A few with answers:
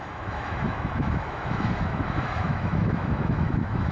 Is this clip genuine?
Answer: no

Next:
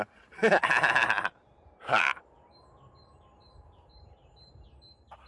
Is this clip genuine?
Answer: yes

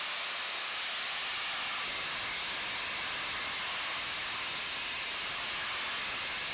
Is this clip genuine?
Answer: yes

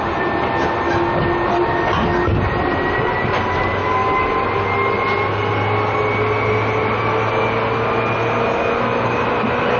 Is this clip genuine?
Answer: yes